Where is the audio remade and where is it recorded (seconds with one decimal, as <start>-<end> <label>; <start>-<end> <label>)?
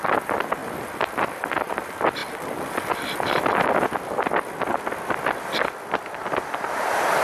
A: 0.0-0.6 remade; 0.6-1.6 recorded; 1.6-2.2 remade; 2.2-5.6 recorded; 5.6-7.2 remade